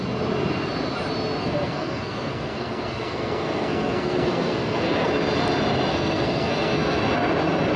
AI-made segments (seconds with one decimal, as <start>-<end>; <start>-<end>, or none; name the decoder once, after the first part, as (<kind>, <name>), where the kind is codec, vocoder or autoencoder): 1.4-5.1 (codec, SNAC); 5.9-7.0